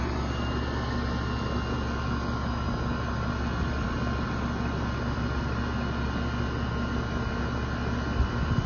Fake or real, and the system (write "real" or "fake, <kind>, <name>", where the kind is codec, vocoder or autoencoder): real